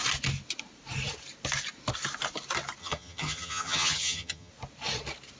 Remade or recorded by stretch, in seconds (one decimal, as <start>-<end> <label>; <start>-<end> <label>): 0.0-2.8 recorded; 2.8-4.5 remade; 4.5-5.4 recorded